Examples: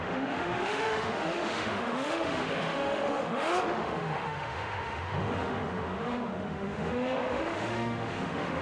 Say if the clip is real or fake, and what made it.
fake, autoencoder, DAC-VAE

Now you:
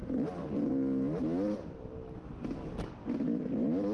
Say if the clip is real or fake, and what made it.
real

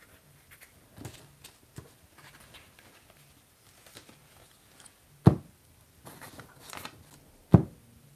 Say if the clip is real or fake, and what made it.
real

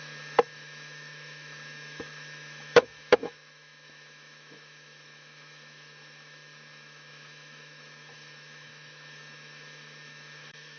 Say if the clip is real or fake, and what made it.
fake, autoencoder, DAC-VAE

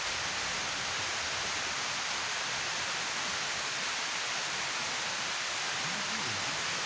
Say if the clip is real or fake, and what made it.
real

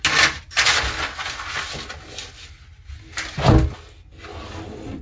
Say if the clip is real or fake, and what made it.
real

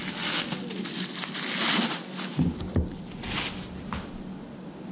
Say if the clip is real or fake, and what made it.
real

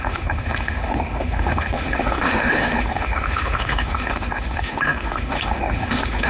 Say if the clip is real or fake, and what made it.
fake, autoencoder, DAC-VAE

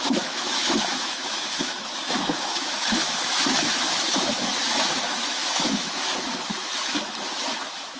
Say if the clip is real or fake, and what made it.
fake, autoencoder, DAC-VAE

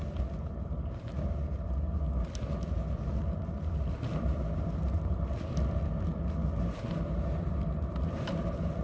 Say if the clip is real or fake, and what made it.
real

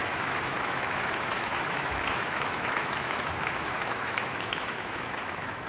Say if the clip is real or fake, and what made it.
fake, autoencoder, DAC-VAE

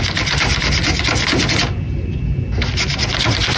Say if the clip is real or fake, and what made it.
real